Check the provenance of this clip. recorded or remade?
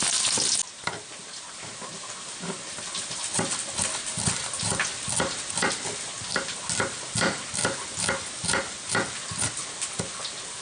recorded